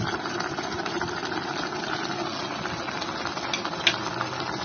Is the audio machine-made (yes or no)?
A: no